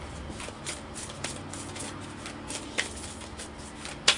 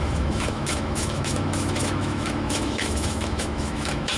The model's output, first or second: second